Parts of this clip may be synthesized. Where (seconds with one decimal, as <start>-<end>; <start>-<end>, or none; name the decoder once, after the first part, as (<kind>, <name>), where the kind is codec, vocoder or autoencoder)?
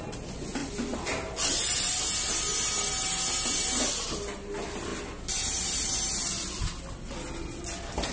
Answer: none